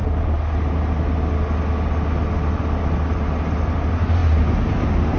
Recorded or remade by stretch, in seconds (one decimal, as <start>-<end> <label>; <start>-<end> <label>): 0.0-5.2 recorded